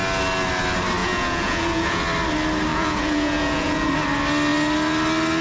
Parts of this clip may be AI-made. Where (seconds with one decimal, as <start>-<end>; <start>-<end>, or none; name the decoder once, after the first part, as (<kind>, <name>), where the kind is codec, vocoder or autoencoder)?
1.0-2.0 (vocoder, Vocos); 2.7-3.9